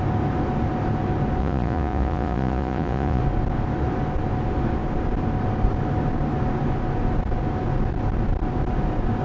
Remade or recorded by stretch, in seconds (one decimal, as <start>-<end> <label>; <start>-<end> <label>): 0.0-1.4 recorded; 1.4-3.2 remade; 3.2-9.2 recorded